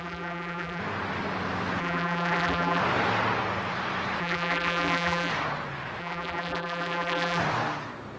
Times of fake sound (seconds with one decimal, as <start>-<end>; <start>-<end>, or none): 0.0-0.8; 1.8-2.8; 4.2-5.3; 6.0-7.4